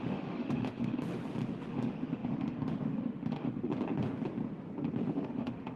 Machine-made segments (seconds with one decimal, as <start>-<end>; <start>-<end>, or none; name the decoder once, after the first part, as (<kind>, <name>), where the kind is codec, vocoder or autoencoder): 0.0-1.1 (autoencoder, DAC-VAE); 1.7-3.7; 5.1-5.8